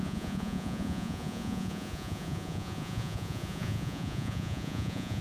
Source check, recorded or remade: remade